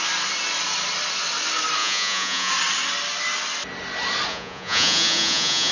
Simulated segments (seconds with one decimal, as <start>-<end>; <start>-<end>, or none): 1.8-2.5; 4.3-5.7